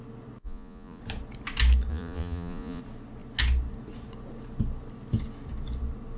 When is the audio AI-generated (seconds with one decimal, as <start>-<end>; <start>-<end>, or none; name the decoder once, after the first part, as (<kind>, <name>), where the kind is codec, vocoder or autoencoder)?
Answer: 0.4-1.0 (vocoder, Vocos); 1.9-2.8